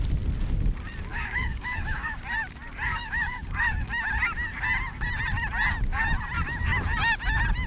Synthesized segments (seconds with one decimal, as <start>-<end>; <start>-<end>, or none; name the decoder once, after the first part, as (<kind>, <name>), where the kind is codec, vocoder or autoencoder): 1.1-2.2 (codec, DAC); 2.9-3.9